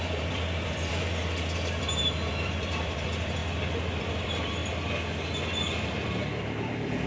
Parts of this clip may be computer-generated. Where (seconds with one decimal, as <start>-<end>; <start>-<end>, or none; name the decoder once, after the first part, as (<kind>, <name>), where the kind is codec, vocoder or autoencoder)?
0.0-3.4 (vocoder, BigVGAN v2); 4.0-4.6; 5.9-7.1

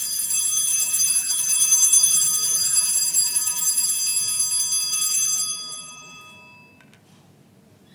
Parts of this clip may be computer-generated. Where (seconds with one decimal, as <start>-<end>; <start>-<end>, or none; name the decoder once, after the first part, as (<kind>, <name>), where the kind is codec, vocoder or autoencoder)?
0.7-3.9 (vocoder, BigVGAN v2); 4.9-6.2

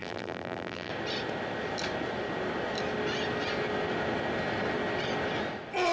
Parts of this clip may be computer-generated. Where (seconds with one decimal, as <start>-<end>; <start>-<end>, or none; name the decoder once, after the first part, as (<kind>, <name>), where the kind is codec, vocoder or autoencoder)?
0.0-0.9 (vocoder, BigVGAN v2)

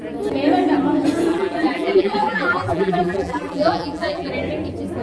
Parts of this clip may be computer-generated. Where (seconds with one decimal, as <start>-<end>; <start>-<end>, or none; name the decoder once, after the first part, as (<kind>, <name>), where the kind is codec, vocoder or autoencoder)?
1.3-4.3 (vocoder, BigVGAN v2)

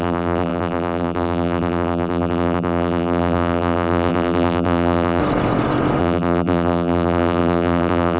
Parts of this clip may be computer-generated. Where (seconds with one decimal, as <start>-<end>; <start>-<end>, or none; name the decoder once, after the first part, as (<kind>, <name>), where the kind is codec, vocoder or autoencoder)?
0.0-5.2 (vocoder, BigVGAN v2); 6.0-8.2